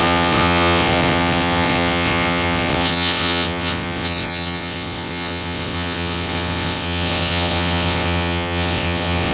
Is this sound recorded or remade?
remade